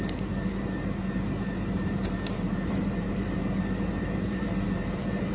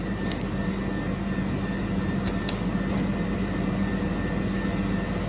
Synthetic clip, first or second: first